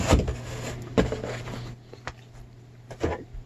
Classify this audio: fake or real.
real